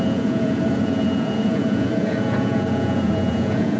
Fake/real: fake